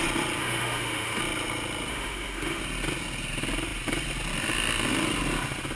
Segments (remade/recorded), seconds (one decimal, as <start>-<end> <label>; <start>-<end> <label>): 0.0-0.4 recorded; 0.4-1.2 remade; 1.2-1.9 recorded; 1.9-2.6 remade; 2.6-5.8 recorded